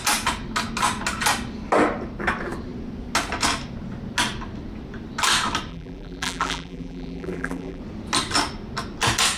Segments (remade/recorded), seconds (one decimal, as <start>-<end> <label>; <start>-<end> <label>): 0.0-5.7 recorded; 5.7-7.8 remade; 7.8-9.4 recorded